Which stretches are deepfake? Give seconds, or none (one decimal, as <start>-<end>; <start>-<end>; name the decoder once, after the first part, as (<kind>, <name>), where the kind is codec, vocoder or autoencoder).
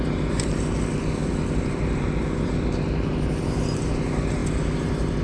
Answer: 1.2-2.7 (vocoder, BigVGAN v2); 4.4-5.2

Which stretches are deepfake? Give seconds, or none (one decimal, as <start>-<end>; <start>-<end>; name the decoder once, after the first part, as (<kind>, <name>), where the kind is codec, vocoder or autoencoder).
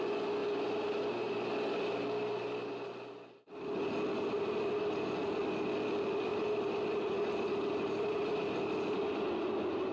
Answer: 6.3-8.6 (vocoder, BigVGAN v2)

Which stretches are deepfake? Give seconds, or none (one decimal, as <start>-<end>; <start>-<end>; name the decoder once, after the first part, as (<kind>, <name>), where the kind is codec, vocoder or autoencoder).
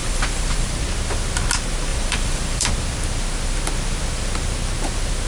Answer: 0.0-0.8 (vocoder, BigVGAN v2); 1.9-2.7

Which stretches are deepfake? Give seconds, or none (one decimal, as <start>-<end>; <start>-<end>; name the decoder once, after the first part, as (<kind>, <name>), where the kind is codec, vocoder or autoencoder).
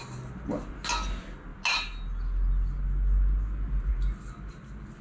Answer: none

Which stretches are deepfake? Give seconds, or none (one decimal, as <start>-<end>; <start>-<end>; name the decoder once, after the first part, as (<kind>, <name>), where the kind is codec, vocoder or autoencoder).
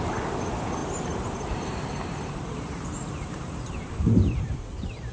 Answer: 0.8-3.9 (vocoder, BigVGAN v2)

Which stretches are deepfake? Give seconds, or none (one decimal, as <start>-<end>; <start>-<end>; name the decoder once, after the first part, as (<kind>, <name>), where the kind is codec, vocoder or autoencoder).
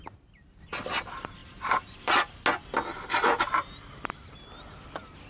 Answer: 1.4-2.1 (vocoder, BigVGAN v2)